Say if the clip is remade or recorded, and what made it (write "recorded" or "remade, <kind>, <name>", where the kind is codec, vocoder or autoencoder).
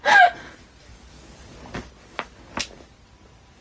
recorded